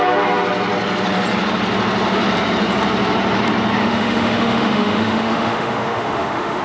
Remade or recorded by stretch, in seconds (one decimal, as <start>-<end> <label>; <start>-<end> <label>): 0.0-3.8 recorded; 3.8-6.6 remade